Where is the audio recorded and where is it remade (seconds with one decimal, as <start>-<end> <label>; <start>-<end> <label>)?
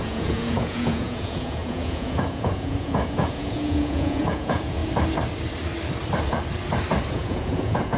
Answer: 0.0-4.8 remade; 4.8-7.1 recorded; 7.1-8.0 remade